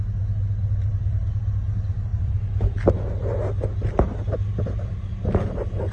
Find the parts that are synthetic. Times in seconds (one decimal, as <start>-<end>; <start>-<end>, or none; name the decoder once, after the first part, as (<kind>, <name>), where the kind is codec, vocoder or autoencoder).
0.9-1.4 (vocoder, BigVGAN v2); 2.1-2.9